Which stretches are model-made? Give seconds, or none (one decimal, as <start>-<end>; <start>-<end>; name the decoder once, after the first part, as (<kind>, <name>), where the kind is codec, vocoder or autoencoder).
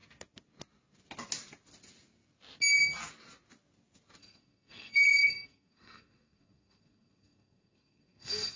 4.2-8.6 (codec, SNAC)